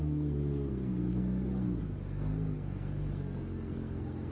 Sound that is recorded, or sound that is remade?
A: remade